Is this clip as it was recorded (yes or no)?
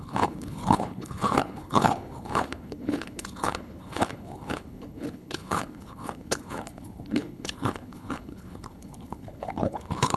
no